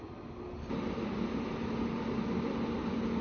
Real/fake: real